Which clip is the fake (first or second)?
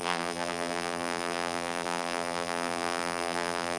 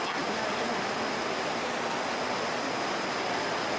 first